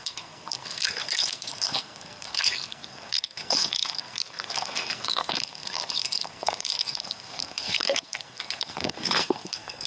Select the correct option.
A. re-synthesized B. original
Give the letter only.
A